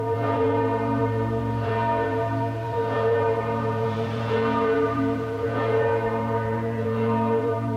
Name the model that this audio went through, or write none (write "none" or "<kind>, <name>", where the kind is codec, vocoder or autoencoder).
vocoder, Vocos